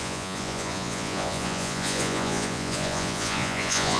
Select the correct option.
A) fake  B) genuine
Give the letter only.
A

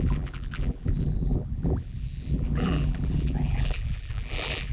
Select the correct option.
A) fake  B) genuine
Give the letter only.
A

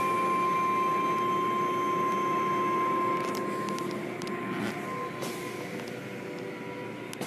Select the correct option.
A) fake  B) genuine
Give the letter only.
B